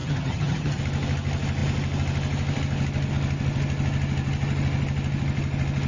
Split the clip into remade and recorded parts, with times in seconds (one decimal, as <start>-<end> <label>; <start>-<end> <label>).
0.0-0.8 remade; 0.8-5.9 recorded